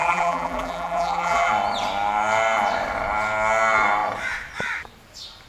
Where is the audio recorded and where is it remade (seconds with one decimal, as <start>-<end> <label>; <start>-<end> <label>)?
0.0-1.5 remade; 1.5-5.5 recorded